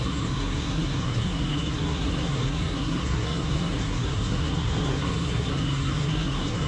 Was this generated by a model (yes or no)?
yes